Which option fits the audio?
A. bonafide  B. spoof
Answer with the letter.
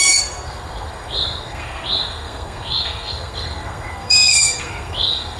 B